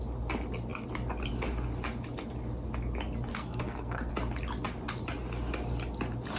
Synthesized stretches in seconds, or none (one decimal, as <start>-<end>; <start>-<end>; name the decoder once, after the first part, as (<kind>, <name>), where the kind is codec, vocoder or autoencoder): 3.3-4.1 (codec, SNAC)